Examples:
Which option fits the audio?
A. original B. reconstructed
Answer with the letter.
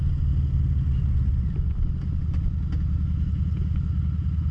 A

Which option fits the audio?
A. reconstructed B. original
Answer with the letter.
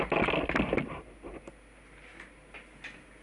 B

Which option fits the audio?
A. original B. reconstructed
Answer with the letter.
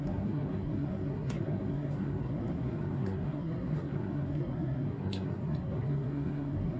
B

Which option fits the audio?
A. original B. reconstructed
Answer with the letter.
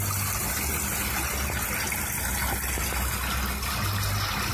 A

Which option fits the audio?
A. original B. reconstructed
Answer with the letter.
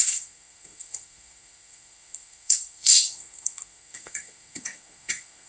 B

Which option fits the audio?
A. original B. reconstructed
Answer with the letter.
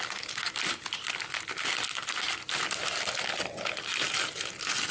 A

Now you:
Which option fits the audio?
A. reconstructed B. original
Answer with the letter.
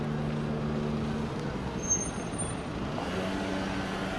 B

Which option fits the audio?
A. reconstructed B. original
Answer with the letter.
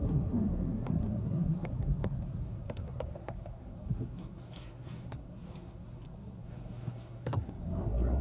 A